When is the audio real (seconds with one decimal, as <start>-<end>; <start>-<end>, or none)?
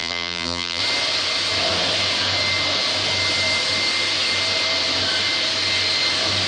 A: 0.8-6.5